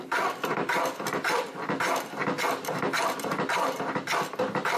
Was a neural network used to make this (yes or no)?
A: no